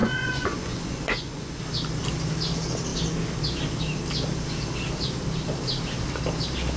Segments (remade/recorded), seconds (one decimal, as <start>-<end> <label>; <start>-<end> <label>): 0.0-1.6 remade; 1.6-6.8 recorded